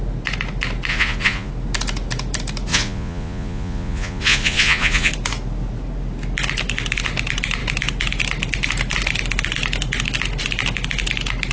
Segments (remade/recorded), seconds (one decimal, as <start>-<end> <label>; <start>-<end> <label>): 0.0-0.9 recorded; 0.9-1.5 remade; 1.5-2.7 recorded; 2.7-5.1 remade; 5.1-11.5 recorded